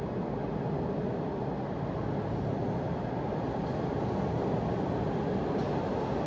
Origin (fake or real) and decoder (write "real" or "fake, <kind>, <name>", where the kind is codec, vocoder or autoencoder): real